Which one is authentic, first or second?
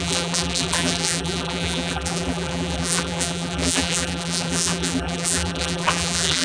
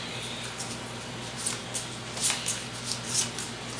second